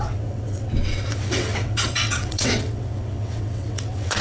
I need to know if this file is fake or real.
fake